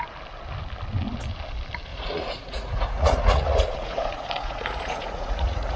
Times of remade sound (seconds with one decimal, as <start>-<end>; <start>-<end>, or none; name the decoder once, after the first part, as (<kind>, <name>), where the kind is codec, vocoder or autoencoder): 1.9-5.8 (vocoder, Vocos)